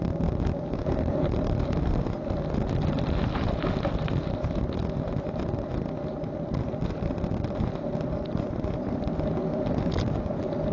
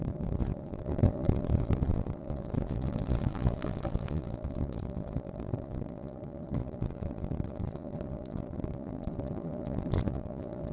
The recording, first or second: first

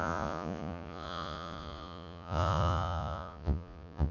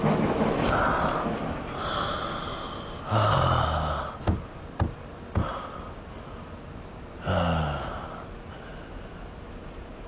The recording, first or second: second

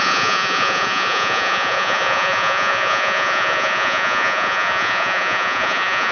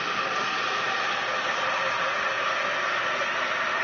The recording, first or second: second